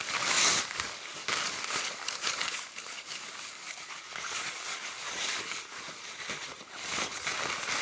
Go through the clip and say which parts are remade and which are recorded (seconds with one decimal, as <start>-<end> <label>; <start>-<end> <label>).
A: 0.0-6.0 remade; 6.0-7.8 recorded